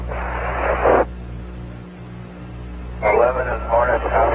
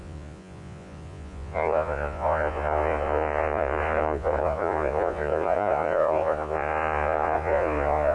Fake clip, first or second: second